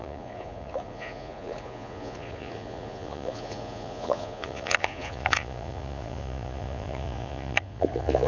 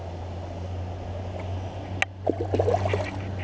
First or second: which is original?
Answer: second